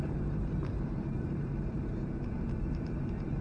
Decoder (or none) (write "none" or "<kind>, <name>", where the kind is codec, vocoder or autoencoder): vocoder, BigVGAN v2